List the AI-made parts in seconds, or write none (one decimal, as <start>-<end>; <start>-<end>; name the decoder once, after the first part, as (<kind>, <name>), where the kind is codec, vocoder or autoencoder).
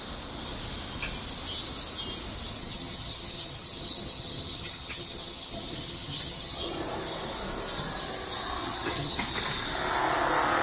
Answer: 2.6-6.7 (vocoder, HiFi-GAN); 8.6-9.2